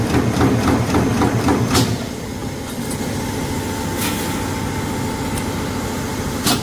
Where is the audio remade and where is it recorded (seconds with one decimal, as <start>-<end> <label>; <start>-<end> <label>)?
0.0-6.6 recorded